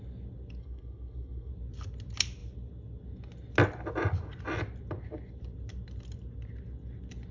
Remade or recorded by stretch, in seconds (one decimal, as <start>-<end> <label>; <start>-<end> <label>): 0.0-0.6 recorded; 0.6-1.5 remade; 1.5-7.3 recorded